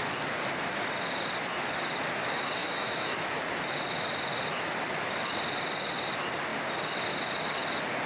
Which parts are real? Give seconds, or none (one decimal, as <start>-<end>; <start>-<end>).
0.0-2.6; 3.3-8.1